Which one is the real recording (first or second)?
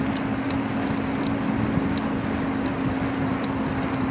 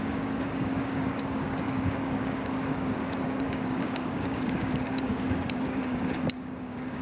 first